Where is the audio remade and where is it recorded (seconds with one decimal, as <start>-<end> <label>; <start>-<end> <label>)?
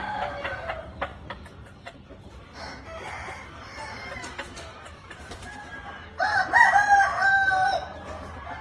0.0-1.1 recorded; 1.1-1.9 remade; 1.9-4.7 recorded; 4.7-5.5 remade; 5.5-8.6 recorded